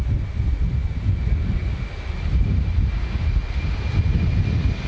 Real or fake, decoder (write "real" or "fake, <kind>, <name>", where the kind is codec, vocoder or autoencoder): real